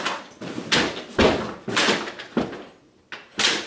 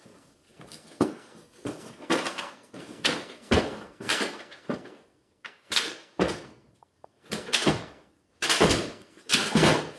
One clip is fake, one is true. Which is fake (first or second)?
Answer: second